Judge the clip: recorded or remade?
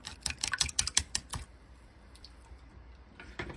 remade